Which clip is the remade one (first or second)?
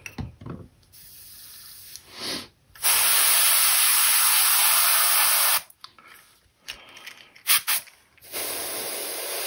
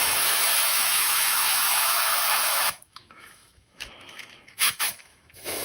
second